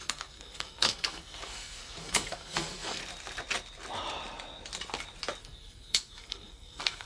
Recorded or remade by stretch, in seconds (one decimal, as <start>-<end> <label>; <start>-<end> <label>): 0.0-3.0 remade; 3.0-5.4 recorded; 5.4-7.1 remade